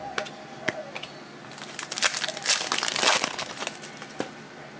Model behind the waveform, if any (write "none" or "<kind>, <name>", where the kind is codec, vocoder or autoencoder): none